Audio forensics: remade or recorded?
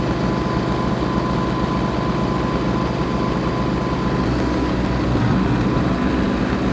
recorded